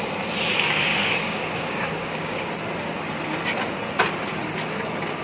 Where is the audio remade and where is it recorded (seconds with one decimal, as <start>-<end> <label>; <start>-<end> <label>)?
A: 0.0-0.9 recorded; 0.9-2.5 remade; 2.5-5.2 recorded